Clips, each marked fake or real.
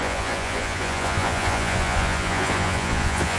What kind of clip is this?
fake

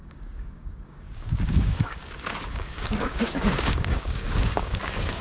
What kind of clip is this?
fake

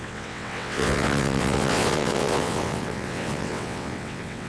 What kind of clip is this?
fake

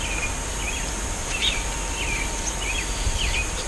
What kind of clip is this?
real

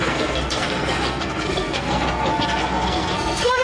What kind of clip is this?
fake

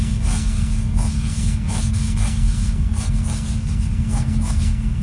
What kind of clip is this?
fake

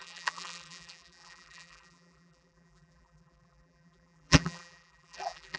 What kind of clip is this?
fake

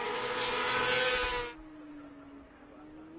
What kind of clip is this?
real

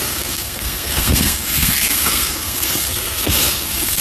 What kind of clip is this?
fake